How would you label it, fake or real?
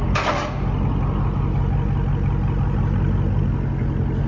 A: real